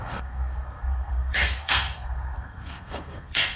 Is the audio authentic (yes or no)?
no